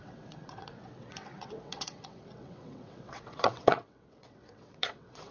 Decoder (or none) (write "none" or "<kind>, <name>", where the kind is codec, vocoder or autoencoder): vocoder, WaveNeXt